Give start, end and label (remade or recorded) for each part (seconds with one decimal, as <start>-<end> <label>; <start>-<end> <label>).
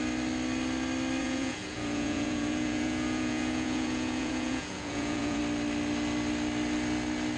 0.0-1.2 recorded; 1.2-5.4 remade; 5.4-7.4 recorded